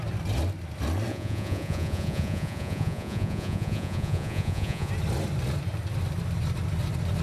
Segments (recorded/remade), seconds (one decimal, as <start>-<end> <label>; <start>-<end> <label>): 0.0-1.1 recorded; 1.1-4.9 remade; 4.9-7.2 recorded